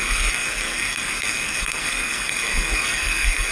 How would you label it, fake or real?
fake